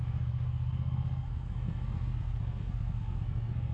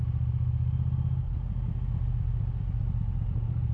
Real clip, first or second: second